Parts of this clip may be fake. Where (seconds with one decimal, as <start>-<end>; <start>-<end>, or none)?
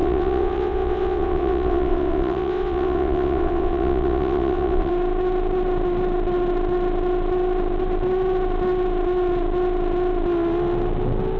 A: 0.0-4.9